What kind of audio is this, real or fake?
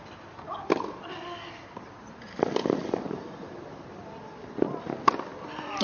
real